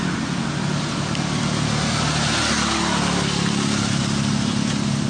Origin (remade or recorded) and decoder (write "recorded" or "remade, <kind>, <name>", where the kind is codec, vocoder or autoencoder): recorded